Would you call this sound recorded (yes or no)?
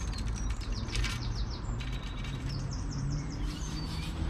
no